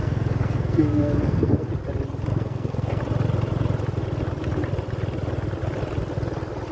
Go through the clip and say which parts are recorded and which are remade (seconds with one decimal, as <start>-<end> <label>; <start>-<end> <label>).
0.0-1.7 remade; 1.7-2.3 recorded; 2.3-3.0 remade; 3.0-6.7 recorded